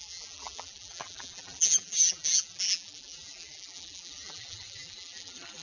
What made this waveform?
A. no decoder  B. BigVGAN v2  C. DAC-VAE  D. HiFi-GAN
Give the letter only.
B